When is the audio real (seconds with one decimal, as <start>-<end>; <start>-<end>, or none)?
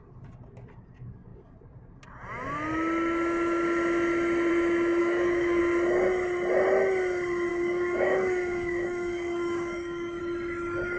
0.0-5.0; 5.6-7.5; 10.2-11.0